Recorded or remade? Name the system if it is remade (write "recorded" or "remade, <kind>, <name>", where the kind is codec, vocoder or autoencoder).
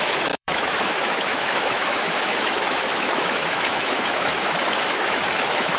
remade, autoencoder, DAC-VAE